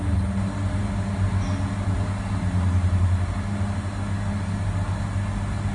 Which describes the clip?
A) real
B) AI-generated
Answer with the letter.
A